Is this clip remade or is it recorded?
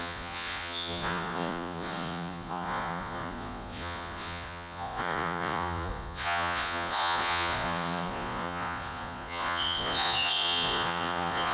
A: remade